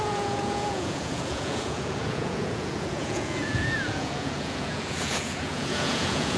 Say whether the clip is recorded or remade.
remade